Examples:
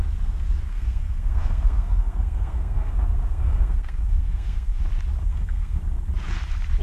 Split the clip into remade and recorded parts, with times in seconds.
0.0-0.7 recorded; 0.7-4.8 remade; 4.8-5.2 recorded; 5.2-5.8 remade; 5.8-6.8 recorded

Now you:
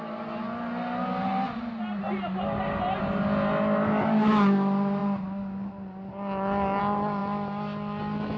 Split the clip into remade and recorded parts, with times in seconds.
0.0-8.4 recorded

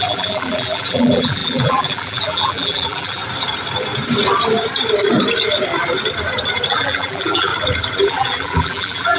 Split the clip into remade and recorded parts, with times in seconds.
0.0-3.2 remade; 3.2-6.7 recorded; 6.7-7.5 remade; 7.5-8.0 recorded; 8.0-9.2 remade

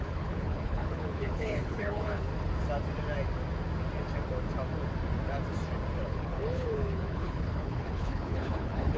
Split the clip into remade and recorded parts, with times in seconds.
0.0-2.3 remade; 2.3-6.0 recorded; 6.0-9.0 remade

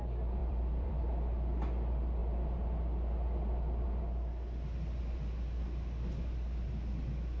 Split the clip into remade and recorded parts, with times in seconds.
0.0-0.4 recorded; 0.4-1.0 remade; 1.0-7.4 recorded